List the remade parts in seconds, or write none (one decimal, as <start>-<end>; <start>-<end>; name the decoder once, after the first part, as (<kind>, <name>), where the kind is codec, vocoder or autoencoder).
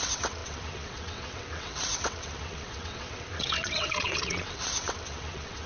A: 0.0-5.7 (vocoder, WaveNeXt)